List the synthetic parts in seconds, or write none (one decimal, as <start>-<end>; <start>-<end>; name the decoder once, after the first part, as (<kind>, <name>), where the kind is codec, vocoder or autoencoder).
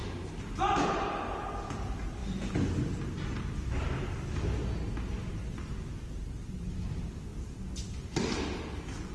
none